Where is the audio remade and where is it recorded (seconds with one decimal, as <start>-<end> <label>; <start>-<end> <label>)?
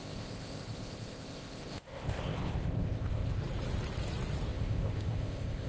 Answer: 0.0-3.4 remade; 3.4-4.5 recorded; 4.5-5.7 remade